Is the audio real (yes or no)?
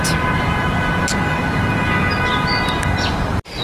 yes